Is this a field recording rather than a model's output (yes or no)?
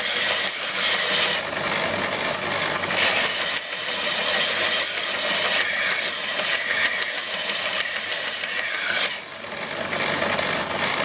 yes